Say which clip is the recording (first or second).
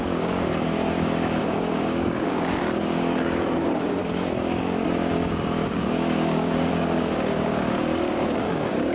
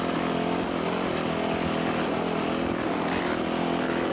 second